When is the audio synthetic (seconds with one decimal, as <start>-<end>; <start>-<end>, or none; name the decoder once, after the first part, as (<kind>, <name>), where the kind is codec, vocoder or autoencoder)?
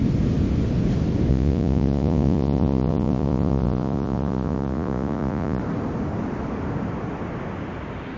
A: 1.3-5.6 (vocoder, Vocos)